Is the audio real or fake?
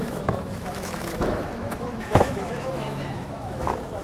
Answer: fake